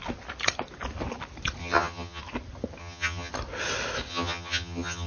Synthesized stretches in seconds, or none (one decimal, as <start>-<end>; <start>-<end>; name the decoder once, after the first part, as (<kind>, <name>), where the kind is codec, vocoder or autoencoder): 1.6-2.2 (vocoder, HiFi-GAN); 2.8-3.3; 4.1-5.1